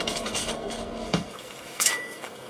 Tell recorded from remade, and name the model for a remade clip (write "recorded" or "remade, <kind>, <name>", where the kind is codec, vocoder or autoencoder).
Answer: remade, codec, SNAC